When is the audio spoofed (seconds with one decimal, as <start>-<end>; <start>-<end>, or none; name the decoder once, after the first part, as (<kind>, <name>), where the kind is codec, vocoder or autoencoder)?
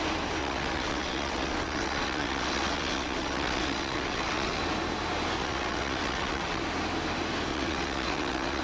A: 0.4-4.6 (vocoder, WaveNeXt); 5.4-6.6; 7.5-8.6